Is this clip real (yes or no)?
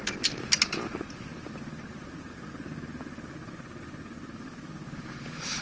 yes